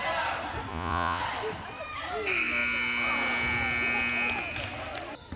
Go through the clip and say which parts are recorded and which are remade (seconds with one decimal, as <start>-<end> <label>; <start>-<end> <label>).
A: 0.0-0.7 recorded; 0.7-1.2 remade; 1.2-5.4 recorded